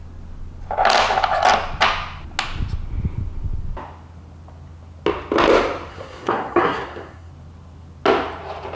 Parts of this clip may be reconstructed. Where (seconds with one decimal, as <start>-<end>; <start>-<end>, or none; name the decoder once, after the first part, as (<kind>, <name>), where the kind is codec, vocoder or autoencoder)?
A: 5.9-7.3 (codec, SNAC)